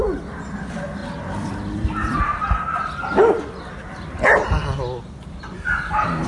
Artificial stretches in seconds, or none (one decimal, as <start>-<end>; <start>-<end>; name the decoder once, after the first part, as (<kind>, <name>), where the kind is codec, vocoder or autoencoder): none